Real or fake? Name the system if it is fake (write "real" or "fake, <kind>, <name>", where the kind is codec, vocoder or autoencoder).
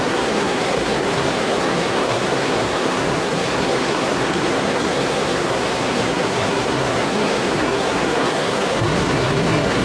fake, codec, SNAC